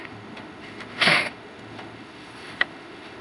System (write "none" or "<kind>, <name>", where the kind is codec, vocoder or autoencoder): autoencoder, DAC-VAE